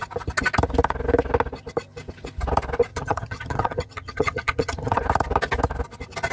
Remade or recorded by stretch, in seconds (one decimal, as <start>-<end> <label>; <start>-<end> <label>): 0.0-2.9 recorded; 2.9-5.0 remade; 5.0-6.3 recorded

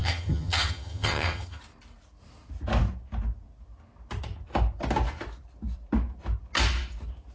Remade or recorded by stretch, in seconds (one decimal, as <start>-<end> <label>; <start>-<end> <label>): 0.0-1.6 remade; 1.6-7.3 recorded

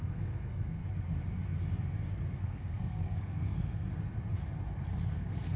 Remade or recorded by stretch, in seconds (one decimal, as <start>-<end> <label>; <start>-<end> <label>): 0.0-0.8 remade; 0.8-2.3 recorded; 2.3-3.9 remade; 3.9-5.0 recorded; 5.0-5.6 remade

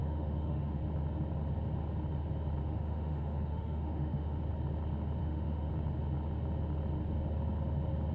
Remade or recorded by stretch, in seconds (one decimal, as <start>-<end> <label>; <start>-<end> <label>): 0.0-0.8 remade; 0.8-2.6 recorded; 2.6-4.4 remade; 4.4-5.2 recorded; 5.2-5.7 remade; 5.7-8.1 recorded

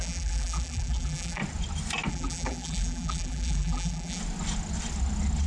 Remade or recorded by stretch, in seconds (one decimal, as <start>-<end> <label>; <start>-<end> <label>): 0.0-1.4 remade; 1.4-2.1 recorded; 2.1-4.2 remade; 4.2-5.5 recorded